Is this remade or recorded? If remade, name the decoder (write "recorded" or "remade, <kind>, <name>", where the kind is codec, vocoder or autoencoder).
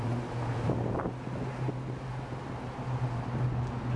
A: recorded